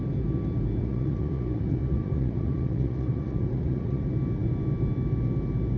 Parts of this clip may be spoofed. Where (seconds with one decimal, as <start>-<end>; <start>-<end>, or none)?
0.8-4.0